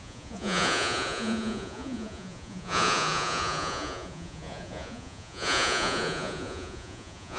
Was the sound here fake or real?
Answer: fake